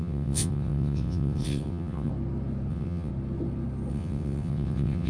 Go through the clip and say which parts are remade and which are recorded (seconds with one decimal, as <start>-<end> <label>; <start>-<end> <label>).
0.0-2.1 remade; 2.1-2.7 recorded; 2.7-3.1 remade; 3.1-3.9 recorded; 3.9-5.1 remade